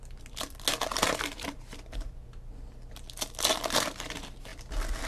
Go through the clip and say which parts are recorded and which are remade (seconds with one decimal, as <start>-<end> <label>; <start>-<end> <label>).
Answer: 0.0-0.9 recorded; 0.9-2.1 remade; 2.1-5.1 recorded